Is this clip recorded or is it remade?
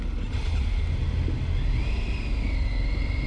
recorded